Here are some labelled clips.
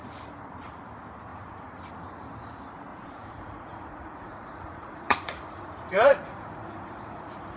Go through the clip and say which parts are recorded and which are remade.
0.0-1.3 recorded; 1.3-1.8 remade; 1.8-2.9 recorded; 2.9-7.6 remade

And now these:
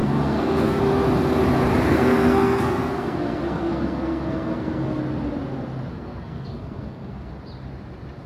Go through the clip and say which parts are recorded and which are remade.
0.0-0.8 remade; 0.8-1.9 recorded; 1.9-5.0 remade; 5.0-5.9 recorded; 5.9-7.3 remade; 7.3-8.3 recorded

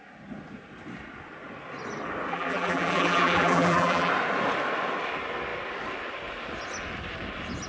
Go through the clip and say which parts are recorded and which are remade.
0.0-2.3 recorded; 2.3-4.1 remade; 4.1-7.7 recorded

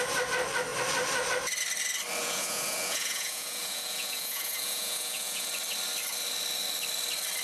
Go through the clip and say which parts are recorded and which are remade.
0.0-2.2 recorded; 2.2-5.5 remade; 5.5-7.4 recorded

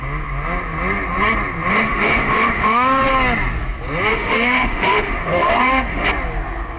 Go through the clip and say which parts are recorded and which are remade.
0.0-1.7 recorded; 1.7-3.1 remade; 3.1-4.1 recorded; 4.1-6.1 remade; 6.1-6.8 recorded

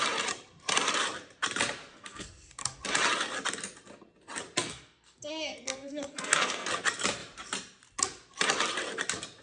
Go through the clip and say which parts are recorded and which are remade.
0.0-1.9 recorded; 1.9-2.8 remade; 2.8-4.6 recorded; 4.6-6.7 remade; 6.7-9.4 recorded

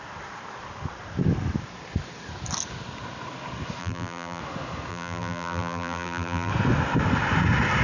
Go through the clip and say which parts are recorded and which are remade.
0.0-3.8 recorded; 3.8-4.4 remade; 4.4-4.9 recorded; 4.9-6.5 remade; 6.5-7.8 recorded